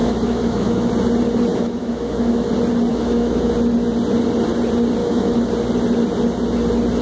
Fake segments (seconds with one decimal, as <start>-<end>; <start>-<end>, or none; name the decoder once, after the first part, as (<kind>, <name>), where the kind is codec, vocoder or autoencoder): 0.0-0.9 (autoencoder, DAC-VAE); 1.5-2.5; 2.9-3.5; 5.0-5.5